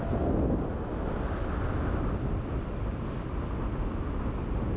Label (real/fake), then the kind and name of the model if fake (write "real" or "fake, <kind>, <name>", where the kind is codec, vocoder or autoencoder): real